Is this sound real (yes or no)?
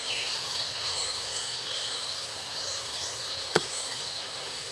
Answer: no